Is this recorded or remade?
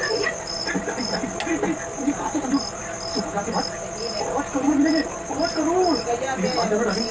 recorded